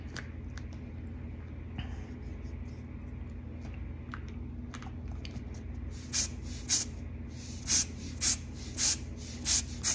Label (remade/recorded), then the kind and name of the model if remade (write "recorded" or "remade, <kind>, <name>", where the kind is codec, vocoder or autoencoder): recorded